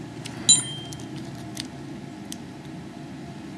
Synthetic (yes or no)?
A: no